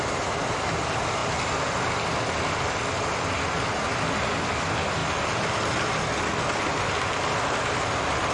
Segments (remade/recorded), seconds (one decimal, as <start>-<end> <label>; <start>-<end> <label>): 0.0-8.3 recorded